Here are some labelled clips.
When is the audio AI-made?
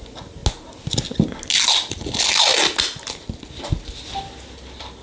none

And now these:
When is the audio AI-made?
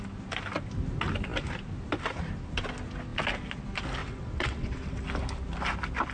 4.0-5.0 (vocoder, WaveNeXt)